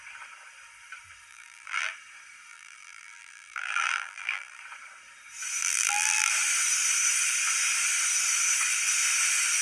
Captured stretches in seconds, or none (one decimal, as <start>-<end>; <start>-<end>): 0.0-1.3; 1.9-2.5; 4.6-5.6; 6.3-9.6